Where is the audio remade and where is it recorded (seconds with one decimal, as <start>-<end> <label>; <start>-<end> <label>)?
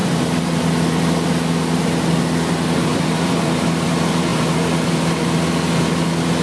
0.0-0.6 remade; 0.6-2.9 recorded; 2.9-3.9 remade; 3.9-4.3 recorded; 4.3-5.3 remade; 5.3-6.4 recorded